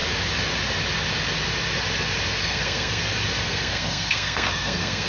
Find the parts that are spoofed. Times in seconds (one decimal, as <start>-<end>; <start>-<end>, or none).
2.4-3.0; 3.4-5.1